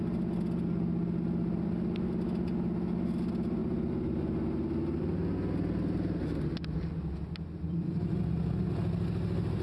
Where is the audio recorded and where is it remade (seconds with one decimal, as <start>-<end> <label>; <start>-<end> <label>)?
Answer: 0.0-9.6 recorded

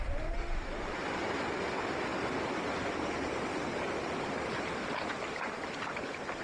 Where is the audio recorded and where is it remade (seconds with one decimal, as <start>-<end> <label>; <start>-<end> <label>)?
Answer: 0.0-6.4 recorded